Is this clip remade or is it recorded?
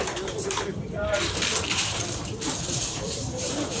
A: remade